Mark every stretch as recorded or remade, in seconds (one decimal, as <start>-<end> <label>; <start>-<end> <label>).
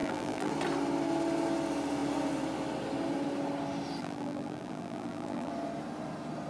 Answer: 0.0-0.5 remade; 0.5-4.0 recorded; 4.0-5.5 remade; 5.5-6.5 recorded